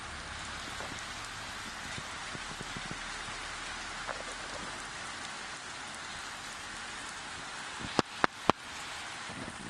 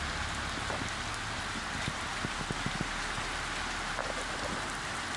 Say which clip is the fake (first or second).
second